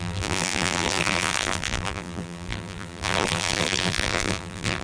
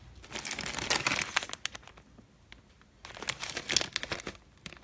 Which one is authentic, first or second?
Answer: second